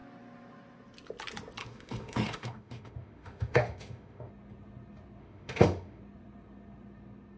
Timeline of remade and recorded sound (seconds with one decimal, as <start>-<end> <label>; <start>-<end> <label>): 0.0-1.6 recorded; 1.6-4.3 remade; 4.3-5.2 recorded; 5.2-6.0 remade; 6.0-7.4 recorded